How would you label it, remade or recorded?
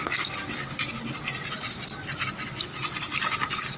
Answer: recorded